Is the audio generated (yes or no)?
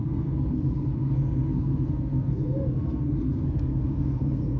yes